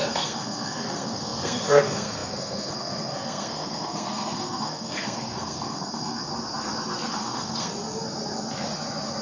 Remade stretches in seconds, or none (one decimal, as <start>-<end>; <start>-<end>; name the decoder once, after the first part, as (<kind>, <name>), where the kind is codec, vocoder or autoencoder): 0.0-6.3 (codec, SNAC); 7.1-7.7